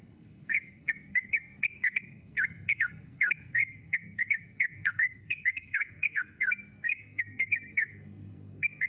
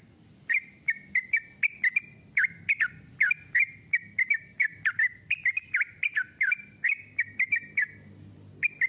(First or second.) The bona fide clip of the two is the second